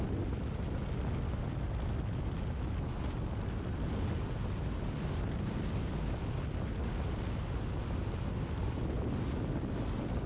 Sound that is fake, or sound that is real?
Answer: real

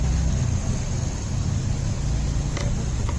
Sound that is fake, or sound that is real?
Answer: real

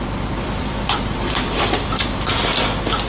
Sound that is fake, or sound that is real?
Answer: fake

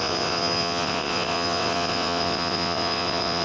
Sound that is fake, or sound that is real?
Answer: fake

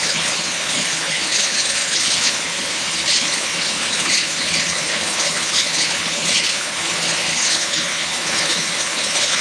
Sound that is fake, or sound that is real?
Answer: fake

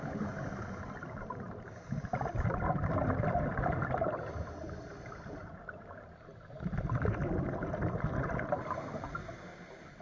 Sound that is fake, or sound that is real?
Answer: real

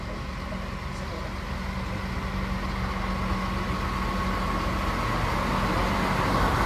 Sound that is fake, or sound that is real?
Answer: real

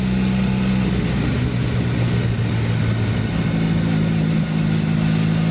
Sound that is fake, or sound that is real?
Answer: real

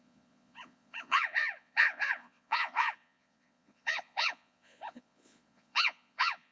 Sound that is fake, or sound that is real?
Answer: fake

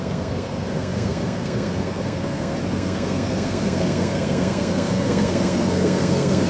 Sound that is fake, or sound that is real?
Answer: fake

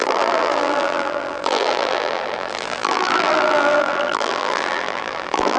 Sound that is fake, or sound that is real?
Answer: fake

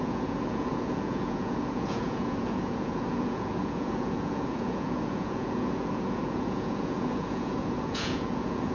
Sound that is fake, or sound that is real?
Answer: fake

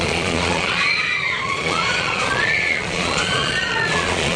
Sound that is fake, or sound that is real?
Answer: fake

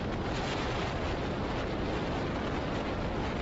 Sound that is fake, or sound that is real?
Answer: real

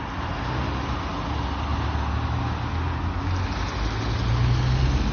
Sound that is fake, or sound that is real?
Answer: real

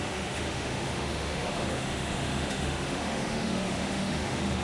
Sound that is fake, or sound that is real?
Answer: fake